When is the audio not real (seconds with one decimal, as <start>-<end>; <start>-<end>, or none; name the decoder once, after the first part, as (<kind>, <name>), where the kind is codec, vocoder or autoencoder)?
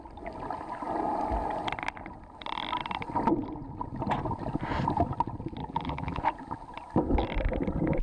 5.6-6.2 (vocoder, BigVGAN v2)